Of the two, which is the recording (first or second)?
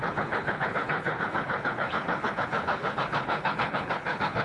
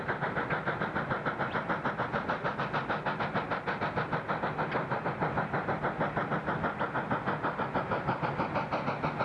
second